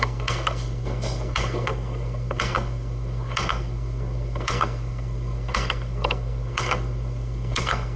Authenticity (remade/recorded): remade